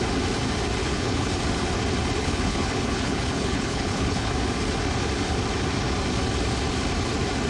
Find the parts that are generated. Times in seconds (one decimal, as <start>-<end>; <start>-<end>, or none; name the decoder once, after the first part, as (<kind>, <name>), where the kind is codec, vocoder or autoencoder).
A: 0.8-1.3 (codec, HILCodec); 2.2-4.3